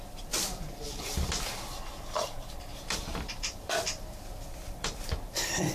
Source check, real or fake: fake